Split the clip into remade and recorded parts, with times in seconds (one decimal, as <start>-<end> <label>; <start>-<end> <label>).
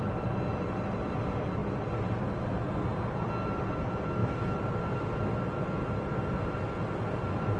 0.0-4.2 recorded; 4.2-5.9 remade; 5.9-7.6 recorded